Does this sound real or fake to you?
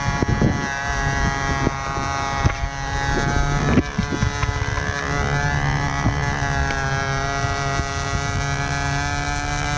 real